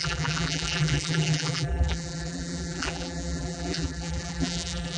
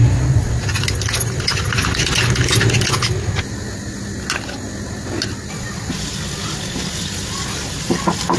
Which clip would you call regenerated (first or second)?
first